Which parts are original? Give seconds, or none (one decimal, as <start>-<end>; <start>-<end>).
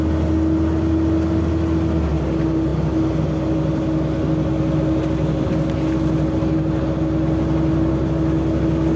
0.0-9.0